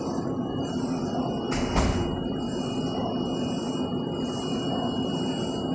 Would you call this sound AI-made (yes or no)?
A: no